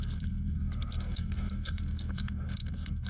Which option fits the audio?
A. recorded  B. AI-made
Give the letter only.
B